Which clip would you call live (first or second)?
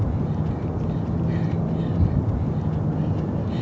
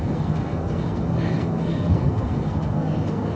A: first